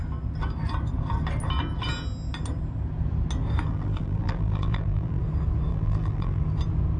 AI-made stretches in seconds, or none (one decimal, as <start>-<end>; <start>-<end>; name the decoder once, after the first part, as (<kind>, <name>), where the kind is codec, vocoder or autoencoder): 3.7-5.2 (vocoder, BigVGAN v2); 5.7-6.4